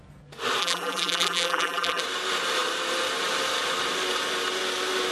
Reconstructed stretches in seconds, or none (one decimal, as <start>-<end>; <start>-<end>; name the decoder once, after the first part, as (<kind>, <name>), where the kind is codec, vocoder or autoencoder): 0.6-2.0 (vocoder, BigVGAN v2)